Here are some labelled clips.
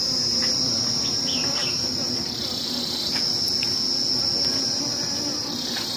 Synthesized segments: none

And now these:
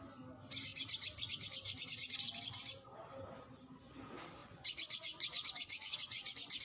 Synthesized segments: 4.4-6.6 (vocoder, Vocos)